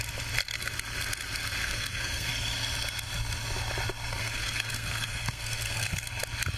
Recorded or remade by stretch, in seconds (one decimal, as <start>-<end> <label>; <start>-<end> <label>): 0.0-1.6 recorded; 1.6-2.3 remade; 2.3-4.2 recorded; 4.2-5.9 remade; 5.9-6.6 recorded